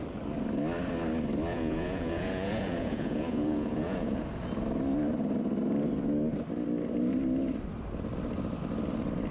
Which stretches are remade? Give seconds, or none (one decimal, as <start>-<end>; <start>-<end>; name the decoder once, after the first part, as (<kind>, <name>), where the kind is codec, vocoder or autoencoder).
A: 1.5-4.3 (vocoder, Vocos)